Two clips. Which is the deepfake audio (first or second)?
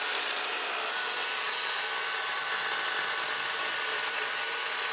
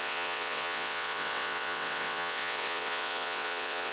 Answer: second